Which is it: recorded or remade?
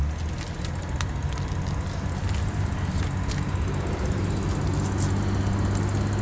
recorded